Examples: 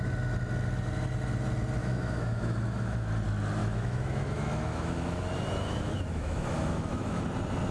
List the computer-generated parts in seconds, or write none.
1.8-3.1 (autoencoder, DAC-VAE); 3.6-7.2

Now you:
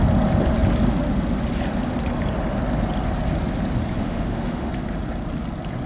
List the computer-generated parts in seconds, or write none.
4.0-4.7 (autoencoder, DAC-VAE)

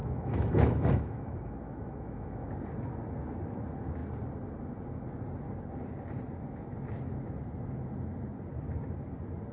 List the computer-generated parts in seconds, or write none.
0.0-2.5 (autoencoder, DAC-VAE)

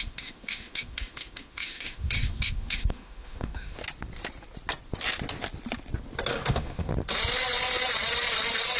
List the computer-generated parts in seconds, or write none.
0.0-3.8 (autoencoder, DAC-VAE); 6.3-6.9